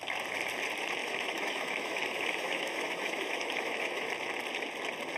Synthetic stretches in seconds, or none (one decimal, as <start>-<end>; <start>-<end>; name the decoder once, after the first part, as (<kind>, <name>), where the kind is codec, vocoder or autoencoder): 1.0-4.1 (autoencoder, DAC-VAE)